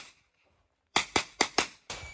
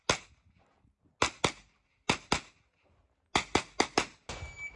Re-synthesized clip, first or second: first